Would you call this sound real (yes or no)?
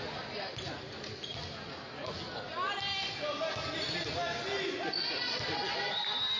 yes